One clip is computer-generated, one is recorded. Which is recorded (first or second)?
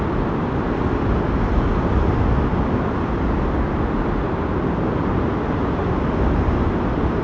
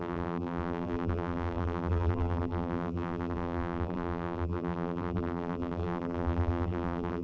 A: first